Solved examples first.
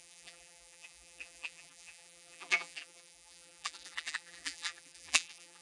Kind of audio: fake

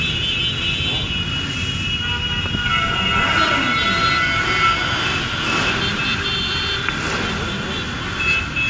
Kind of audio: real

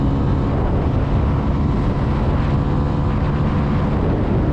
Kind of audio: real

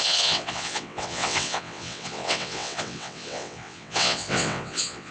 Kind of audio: fake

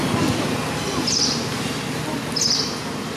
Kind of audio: real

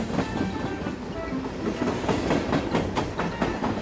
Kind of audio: real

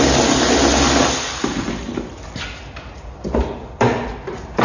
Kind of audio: real